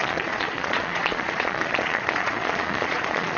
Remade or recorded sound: remade